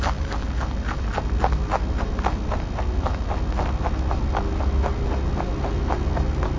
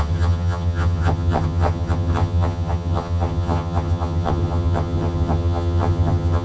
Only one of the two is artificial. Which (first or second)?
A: second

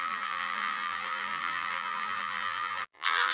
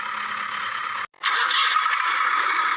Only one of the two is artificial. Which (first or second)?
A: first